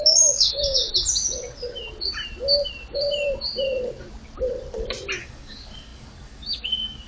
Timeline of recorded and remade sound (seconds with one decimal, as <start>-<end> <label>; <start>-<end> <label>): 0.0-0.9 remade; 0.9-5.2 recorded; 5.2-7.1 remade